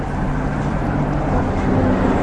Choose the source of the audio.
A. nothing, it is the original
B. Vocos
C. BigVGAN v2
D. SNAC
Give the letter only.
A